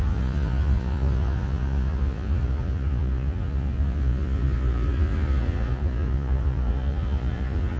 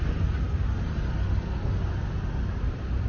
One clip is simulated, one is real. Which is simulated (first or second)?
first